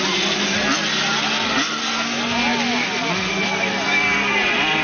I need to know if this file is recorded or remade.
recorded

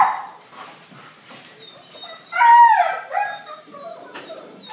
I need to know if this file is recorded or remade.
remade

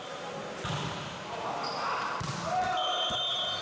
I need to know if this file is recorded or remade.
recorded